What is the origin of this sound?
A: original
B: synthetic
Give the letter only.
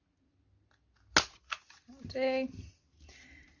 A